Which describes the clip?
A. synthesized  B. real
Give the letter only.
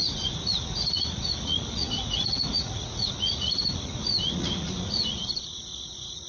A